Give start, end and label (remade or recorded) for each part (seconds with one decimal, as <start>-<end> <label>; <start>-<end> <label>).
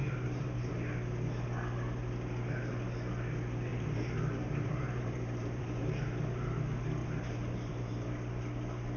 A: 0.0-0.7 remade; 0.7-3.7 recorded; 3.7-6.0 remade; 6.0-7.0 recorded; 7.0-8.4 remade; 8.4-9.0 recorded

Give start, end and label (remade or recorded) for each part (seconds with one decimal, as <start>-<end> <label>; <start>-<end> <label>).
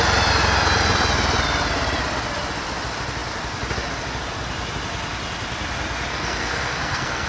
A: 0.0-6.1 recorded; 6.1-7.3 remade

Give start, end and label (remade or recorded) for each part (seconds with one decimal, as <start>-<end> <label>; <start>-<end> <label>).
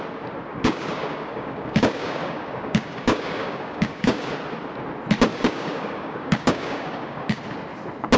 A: 0.0-0.5 recorded; 0.5-4.3 remade; 4.3-5.3 recorded; 5.3-7.4 remade; 7.4-8.2 recorded